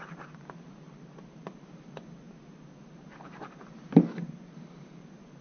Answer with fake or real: real